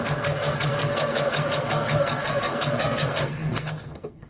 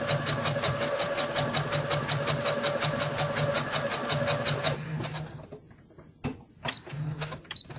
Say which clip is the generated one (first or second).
first